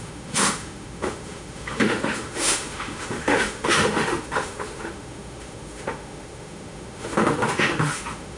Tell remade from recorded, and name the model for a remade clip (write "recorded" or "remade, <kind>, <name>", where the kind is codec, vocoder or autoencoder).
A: remade, autoencoder, DAC-VAE